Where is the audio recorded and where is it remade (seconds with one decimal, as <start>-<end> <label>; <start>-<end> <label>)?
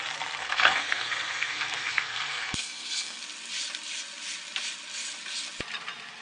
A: 0.0-0.4 recorded; 0.4-3.2 remade; 3.2-6.2 recorded